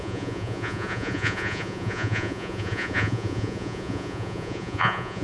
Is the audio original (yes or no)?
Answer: no